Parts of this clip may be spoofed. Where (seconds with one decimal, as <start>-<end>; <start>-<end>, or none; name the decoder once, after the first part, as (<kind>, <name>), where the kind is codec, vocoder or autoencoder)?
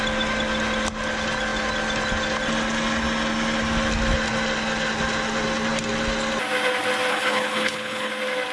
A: 7.1-8.1 (codec, HILCodec)